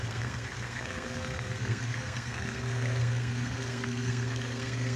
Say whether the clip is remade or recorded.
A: remade